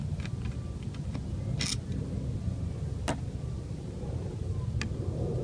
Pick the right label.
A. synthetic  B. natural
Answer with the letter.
B